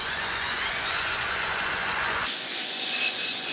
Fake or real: fake